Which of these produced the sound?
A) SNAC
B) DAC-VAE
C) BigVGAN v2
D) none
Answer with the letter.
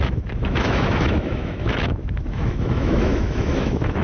B